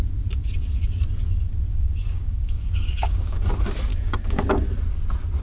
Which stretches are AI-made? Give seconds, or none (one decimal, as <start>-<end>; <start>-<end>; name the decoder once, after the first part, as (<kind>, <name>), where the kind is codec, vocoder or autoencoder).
1.7-3.5 (codec, DAC); 3.9-4.4